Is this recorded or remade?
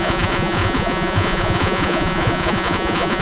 remade